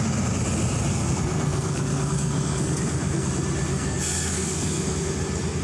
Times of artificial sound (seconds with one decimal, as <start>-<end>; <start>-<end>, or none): 0.9-3.3; 3.7-5.1